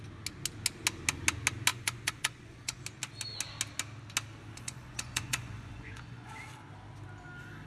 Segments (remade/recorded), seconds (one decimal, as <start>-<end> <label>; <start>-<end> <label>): 0.0-1.7 recorded; 1.7-2.8 remade; 2.8-4.4 recorded; 4.4-6.3 remade; 6.3-7.7 recorded